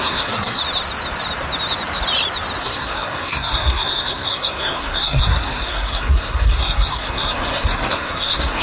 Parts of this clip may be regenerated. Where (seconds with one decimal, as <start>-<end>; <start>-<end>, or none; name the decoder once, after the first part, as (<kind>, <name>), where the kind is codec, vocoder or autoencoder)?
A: 0.0-0.6 (codec, SNAC); 2.6-8.6